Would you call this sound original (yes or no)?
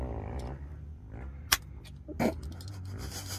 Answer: yes